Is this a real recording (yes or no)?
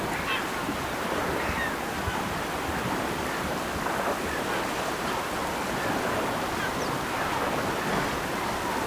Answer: yes